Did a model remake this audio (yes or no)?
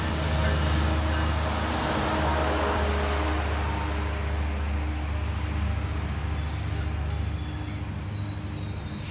no